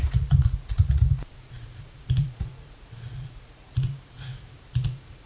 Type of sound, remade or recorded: remade